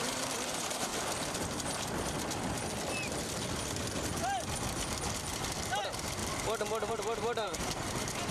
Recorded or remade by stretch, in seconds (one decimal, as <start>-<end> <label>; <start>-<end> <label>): 0.0-0.9 remade; 0.9-5.8 recorded; 5.8-6.2 remade; 6.2-6.9 recorded; 6.9-8.3 remade

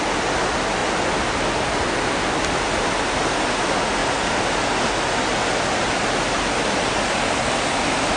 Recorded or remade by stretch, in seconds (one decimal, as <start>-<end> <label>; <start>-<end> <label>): 0.0-4.0 recorded; 4.0-4.6 remade; 4.6-8.2 recorded

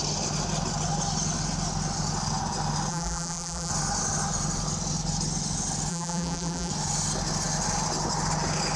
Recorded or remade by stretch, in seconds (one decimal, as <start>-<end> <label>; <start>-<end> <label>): 0.0-2.9 recorded; 2.9-3.7 remade; 3.7-5.9 recorded; 5.9-6.7 remade; 6.7-8.8 recorded

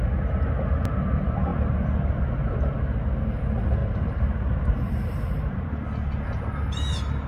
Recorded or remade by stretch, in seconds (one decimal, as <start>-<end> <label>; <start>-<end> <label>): 0.0-3.8 recorded; 3.8-5.6 remade; 5.6-7.3 recorded

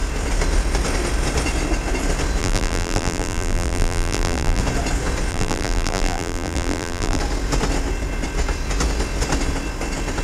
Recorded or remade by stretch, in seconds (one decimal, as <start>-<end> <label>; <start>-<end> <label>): 0.0-2.4 recorded; 2.4-4.6 remade; 4.6-5.3 recorded; 5.3-7.2 remade; 7.2-10.2 recorded